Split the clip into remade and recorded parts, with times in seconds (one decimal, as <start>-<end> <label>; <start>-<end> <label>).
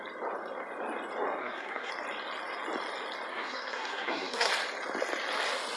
0.0-1.4 recorded; 1.4-1.9 remade; 1.9-3.3 recorded; 3.3-4.5 remade; 4.5-5.8 recorded